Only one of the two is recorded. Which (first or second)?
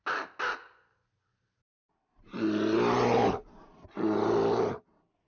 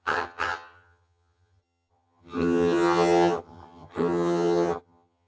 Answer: first